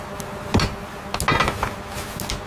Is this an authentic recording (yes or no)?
yes